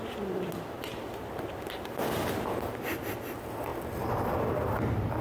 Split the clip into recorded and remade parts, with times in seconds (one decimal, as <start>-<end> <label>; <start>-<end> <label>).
0.0-5.2 recorded